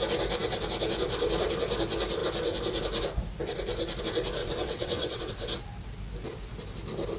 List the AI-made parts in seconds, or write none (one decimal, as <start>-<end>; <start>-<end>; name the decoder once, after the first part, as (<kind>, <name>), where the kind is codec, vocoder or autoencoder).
4.4-5.2 (vocoder, WaveNeXt)